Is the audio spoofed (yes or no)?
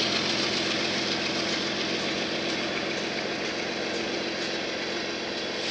no